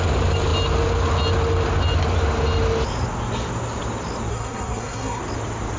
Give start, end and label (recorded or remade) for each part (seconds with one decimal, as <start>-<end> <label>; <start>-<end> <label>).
0.0-4.3 recorded; 4.3-5.2 remade; 5.2-5.8 recorded